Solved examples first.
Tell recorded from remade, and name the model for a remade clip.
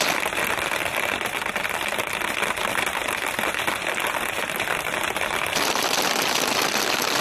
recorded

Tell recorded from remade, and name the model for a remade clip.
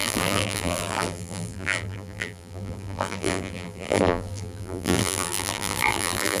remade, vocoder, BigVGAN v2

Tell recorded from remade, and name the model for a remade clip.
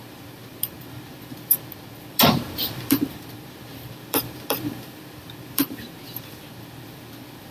remade, vocoder, BigVGAN v2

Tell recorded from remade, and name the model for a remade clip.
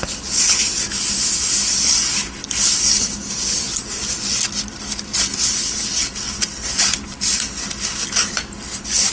recorded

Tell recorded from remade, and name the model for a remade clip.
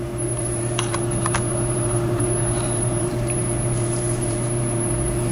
remade, vocoder, BigVGAN v2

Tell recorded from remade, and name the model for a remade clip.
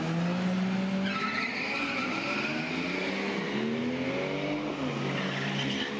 recorded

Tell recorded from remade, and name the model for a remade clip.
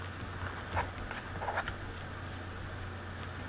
recorded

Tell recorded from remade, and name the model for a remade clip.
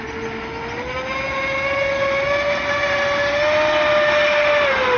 recorded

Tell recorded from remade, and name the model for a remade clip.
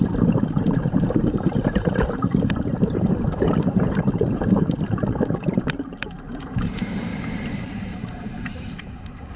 remade, vocoder, BigVGAN v2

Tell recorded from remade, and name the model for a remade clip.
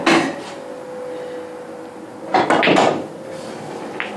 recorded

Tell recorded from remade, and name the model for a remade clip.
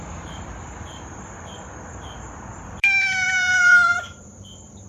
remade, vocoder, BigVGAN v2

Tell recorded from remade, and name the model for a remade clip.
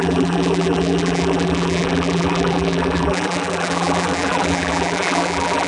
remade, vocoder, BigVGAN v2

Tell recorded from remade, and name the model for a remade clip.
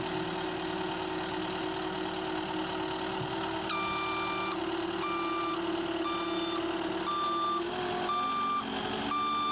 recorded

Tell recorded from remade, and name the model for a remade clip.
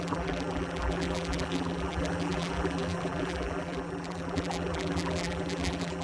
remade, vocoder, BigVGAN v2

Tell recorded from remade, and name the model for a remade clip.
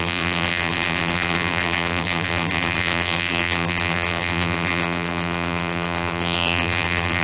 remade, vocoder, BigVGAN v2